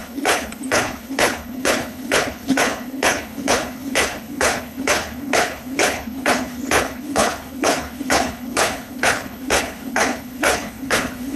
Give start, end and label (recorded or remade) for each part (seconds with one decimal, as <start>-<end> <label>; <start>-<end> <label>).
0.0-11.4 remade